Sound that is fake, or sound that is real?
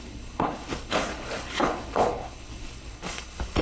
fake